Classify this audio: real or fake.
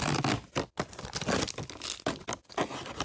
real